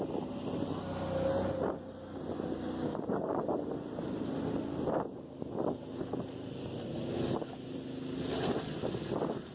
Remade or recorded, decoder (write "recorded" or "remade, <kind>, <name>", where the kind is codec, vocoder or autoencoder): recorded